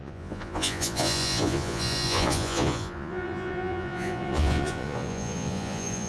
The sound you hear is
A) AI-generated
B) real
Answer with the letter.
A